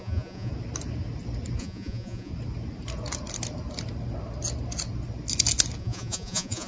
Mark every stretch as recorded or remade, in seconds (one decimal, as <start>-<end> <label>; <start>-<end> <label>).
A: 0.0-0.5 remade; 0.5-1.6 recorded; 1.6-2.3 remade; 2.3-5.8 recorded; 5.8-6.7 remade